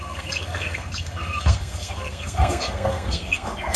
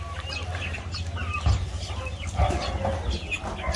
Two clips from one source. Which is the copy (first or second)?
first